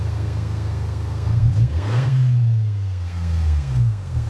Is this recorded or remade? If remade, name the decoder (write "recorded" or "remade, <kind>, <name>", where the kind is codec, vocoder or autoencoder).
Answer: remade, codec, SNAC